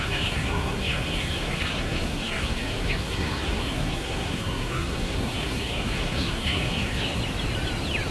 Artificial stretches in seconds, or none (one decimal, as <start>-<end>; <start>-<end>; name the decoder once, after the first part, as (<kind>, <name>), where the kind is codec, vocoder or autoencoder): 0.0-7.2 (codec, SNAC)